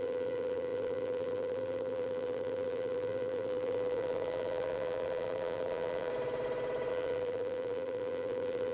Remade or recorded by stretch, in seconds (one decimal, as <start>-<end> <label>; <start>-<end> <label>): 0.0-6.1 remade; 6.1-6.9 recorded; 6.9-8.7 remade